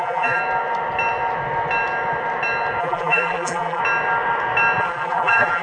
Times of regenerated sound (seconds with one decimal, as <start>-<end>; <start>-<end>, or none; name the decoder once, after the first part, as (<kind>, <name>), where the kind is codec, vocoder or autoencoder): 0.0-0.4 (vocoder, BigVGAN v2); 2.8-3.8; 4.8-5.6